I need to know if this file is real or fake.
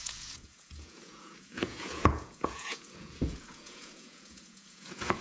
fake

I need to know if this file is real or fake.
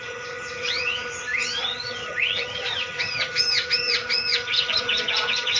fake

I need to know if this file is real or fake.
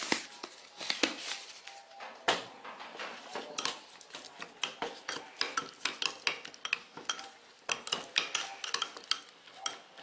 real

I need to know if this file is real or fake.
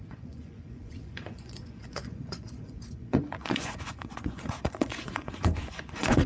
fake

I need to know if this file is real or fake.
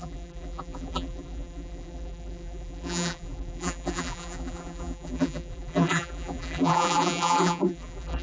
fake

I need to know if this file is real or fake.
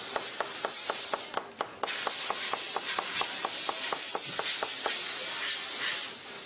real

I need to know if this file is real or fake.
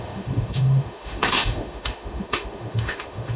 fake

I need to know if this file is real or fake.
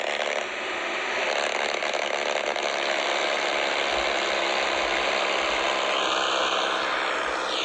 real